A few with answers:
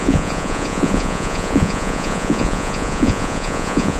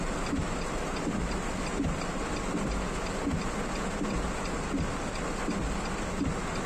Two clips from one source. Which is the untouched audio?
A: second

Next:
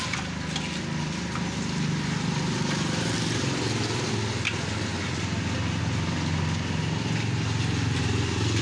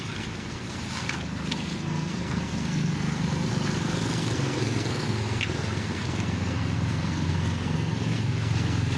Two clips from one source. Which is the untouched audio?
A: first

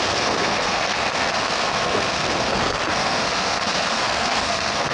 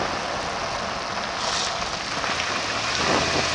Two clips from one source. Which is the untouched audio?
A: second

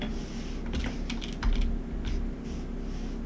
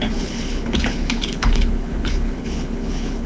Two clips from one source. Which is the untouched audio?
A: first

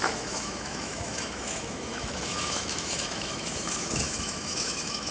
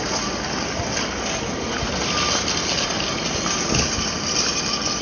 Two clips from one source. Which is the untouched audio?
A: second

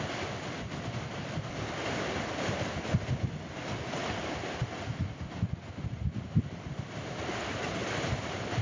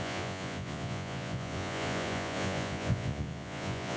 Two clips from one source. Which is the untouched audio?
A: first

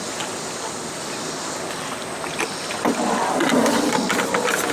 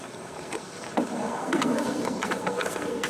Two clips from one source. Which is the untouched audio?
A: first